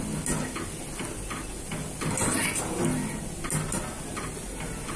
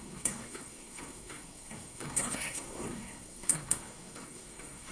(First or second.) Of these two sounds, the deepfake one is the second